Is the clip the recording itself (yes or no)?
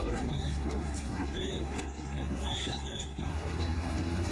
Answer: no